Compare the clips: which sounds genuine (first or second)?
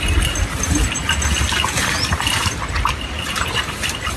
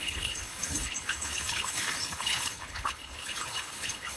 first